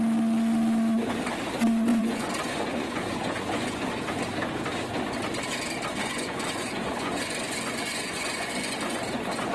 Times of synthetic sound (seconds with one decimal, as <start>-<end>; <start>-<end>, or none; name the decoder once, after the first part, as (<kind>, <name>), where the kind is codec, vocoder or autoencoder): 1.9-3.9 (vocoder, Vocos); 5.9-9.5